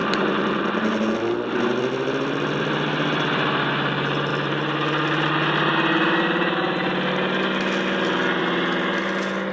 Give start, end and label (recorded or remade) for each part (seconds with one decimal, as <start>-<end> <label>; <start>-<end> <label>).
0.0-9.5 recorded